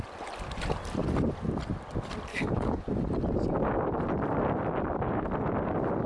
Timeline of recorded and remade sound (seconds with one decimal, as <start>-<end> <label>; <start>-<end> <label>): 0.0-2.3 recorded; 2.3-2.9 remade; 2.9-6.1 recorded

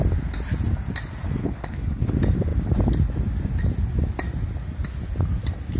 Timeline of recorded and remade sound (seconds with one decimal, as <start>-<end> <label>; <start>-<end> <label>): 0.0-1.4 recorded; 1.4-2.1 remade; 2.1-5.8 recorded

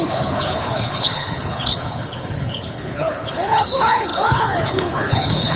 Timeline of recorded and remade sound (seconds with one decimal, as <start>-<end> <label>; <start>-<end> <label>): 0.0-5.6 remade

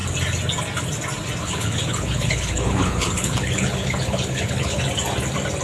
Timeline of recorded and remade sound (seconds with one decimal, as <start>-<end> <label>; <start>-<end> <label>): 0.0-1.4 recorded; 1.4-4.8 remade; 4.8-5.6 recorded

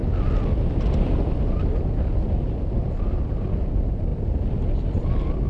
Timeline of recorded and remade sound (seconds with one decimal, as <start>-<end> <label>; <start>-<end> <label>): 0.0-5.5 recorded